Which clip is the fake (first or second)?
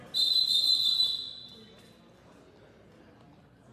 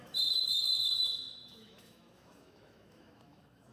second